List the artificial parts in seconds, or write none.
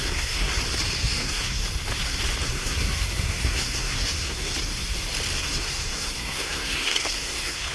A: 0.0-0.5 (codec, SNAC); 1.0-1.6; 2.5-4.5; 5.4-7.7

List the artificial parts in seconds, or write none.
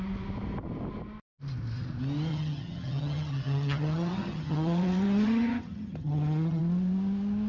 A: 2.3-6.6 (vocoder, HiFi-GAN)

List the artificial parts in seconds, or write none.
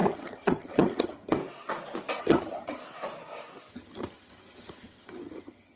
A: 0.0-1.4 (vocoder, HiFi-GAN); 2.2-2.8; 3.7-5.8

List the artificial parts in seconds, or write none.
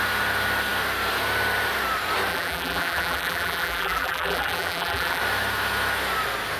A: 2.3-5.2 (vocoder, BigVGAN v2)